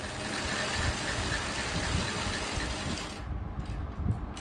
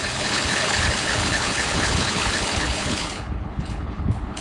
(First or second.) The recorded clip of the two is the first